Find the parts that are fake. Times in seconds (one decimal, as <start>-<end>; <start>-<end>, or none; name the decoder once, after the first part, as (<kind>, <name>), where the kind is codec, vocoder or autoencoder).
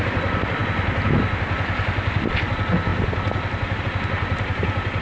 none